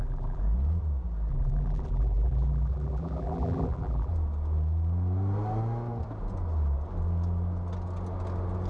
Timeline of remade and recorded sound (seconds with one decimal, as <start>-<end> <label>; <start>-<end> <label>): 0.0-0.4 remade; 0.4-1.3 recorded; 1.3-4.1 remade; 4.1-8.7 recorded